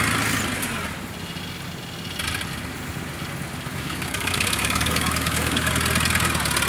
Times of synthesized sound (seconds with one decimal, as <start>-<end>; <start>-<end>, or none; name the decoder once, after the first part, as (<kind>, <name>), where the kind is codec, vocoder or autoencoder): 3.7-5.7 (codec, DAC)